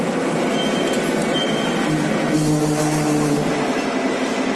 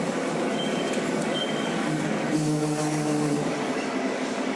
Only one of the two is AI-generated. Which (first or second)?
second